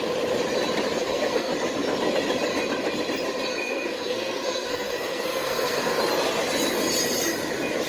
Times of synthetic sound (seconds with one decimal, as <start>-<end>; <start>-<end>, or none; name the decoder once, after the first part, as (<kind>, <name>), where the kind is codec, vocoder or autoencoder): 1.0-1.5 (codec, SNAC); 3.5-6.0